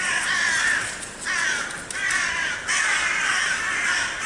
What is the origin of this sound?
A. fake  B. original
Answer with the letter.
B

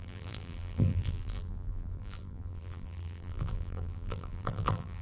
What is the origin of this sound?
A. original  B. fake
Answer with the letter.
B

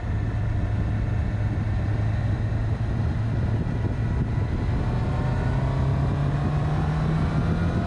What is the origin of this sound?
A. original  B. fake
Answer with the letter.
A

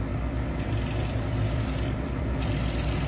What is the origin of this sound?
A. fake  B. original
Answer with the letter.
A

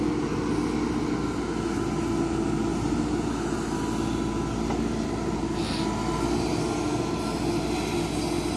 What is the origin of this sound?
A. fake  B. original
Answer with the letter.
B